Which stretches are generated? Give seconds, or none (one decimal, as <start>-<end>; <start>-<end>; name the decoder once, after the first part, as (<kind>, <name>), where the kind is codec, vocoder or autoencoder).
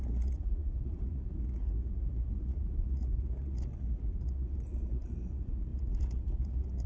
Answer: 0.0-6.9 (vocoder, Vocos)